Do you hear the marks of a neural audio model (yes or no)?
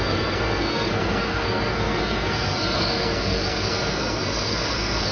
yes